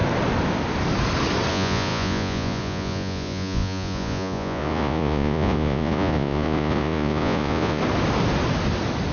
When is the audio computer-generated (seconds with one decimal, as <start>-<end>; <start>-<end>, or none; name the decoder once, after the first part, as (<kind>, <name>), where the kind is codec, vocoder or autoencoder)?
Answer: 1.5-7.8 (vocoder, Vocos)